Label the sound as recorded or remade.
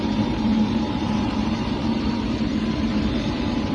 remade